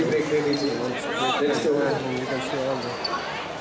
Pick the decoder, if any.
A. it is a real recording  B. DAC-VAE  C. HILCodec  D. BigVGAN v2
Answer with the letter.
A